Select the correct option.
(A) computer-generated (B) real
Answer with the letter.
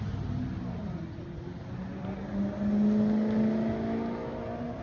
B